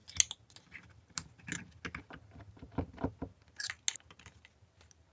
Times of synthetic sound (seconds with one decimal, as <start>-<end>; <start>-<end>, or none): none

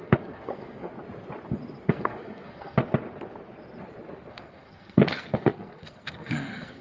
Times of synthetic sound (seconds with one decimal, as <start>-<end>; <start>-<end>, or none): 0.0-0.9; 1.9-2.8; 4.3-6.8

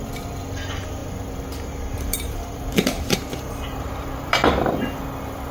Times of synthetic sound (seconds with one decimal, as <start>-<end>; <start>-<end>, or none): 1.0-4.3

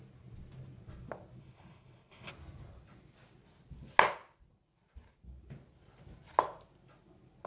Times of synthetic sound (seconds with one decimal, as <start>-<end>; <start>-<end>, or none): 1.4-2.3

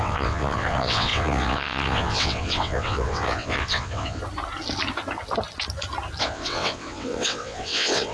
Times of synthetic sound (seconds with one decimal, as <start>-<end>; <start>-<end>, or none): 0.0-4.2; 6.2-8.1

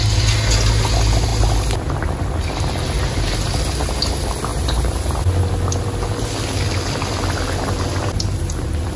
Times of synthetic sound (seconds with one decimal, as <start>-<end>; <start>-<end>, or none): 4.5-5.1

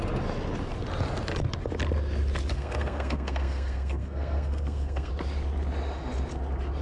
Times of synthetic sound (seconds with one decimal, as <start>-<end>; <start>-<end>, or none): 2.5-5.1